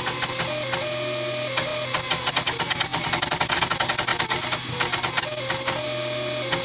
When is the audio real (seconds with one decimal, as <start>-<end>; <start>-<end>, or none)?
0.0-6.6